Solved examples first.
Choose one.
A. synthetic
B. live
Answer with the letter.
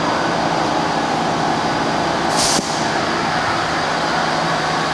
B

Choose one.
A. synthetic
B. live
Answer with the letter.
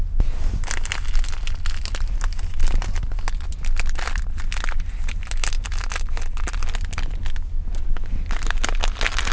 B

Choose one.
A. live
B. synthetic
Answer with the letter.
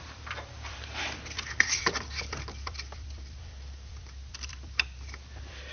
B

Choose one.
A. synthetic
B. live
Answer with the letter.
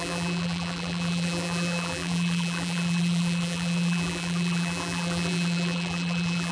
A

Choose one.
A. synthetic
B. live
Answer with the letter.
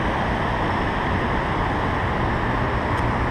B